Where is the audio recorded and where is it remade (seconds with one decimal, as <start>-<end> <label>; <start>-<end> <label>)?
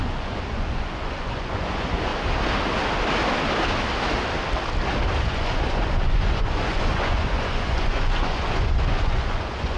0.0-2.1 remade; 2.1-5.2 recorded; 5.2-9.8 remade